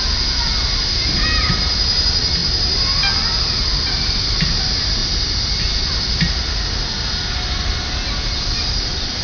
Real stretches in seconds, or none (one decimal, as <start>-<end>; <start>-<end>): 0.0-9.2